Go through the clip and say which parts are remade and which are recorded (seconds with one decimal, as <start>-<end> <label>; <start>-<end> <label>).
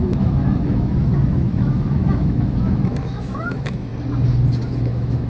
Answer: 0.0-3.9 remade; 3.9-4.7 recorded; 4.7-5.3 remade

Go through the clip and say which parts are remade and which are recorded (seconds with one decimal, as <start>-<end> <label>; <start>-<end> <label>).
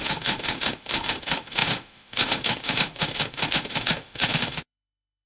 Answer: 0.0-5.3 remade